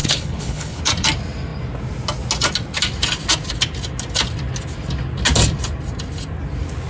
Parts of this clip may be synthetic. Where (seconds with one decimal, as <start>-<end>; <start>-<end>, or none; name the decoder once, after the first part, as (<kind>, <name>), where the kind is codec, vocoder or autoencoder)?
0.0-0.8 (codec, HILCodec)